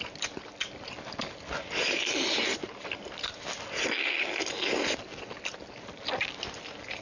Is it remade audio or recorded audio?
recorded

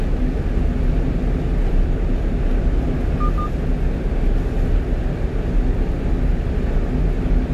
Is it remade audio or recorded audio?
recorded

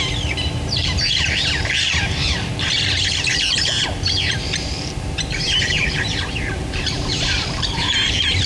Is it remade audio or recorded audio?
remade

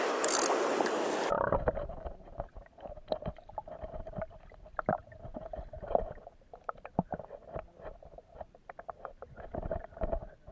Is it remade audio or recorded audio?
remade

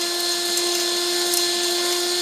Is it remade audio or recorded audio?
recorded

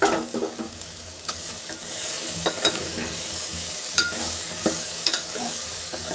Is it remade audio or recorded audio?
remade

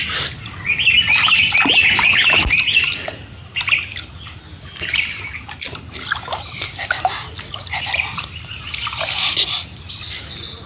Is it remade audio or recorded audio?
recorded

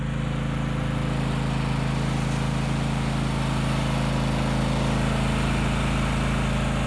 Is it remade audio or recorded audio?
recorded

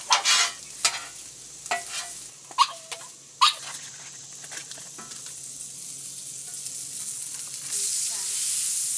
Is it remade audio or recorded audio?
recorded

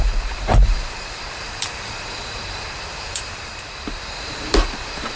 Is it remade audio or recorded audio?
remade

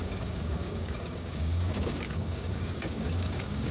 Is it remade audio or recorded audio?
remade